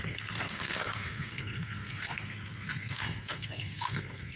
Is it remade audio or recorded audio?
remade